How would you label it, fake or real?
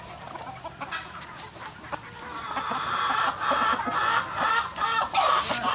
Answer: real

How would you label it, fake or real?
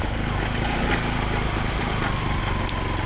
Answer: real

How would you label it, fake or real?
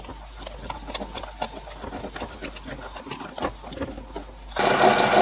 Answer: real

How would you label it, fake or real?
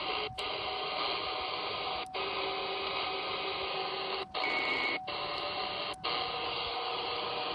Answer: real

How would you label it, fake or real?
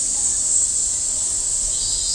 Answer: real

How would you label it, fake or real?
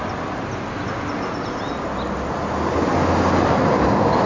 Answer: real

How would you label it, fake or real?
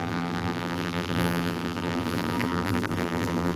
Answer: fake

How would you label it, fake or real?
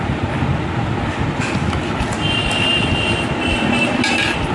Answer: real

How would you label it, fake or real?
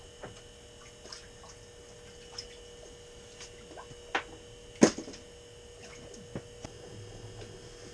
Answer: real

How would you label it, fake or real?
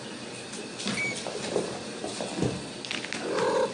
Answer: real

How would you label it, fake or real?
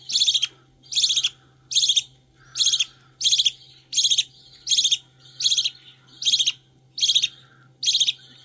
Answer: real